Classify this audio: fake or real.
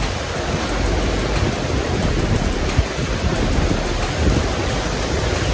real